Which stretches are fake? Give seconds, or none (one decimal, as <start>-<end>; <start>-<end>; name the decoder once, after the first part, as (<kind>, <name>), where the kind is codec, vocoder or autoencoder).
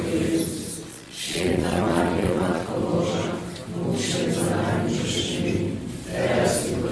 0.9-2.7 (vocoder, Vocos)